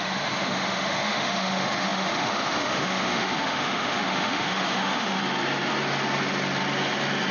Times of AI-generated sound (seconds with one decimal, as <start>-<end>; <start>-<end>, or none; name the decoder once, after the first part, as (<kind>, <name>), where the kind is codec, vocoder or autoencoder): 0.0-5.2 (autoencoder, DAC-VAE)